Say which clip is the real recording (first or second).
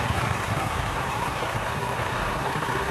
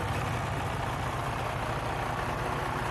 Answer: second